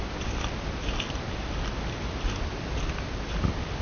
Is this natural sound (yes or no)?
yes